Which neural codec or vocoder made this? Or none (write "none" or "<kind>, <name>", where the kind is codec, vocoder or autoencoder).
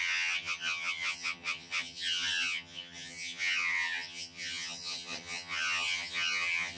vocoder, HiFi-GAN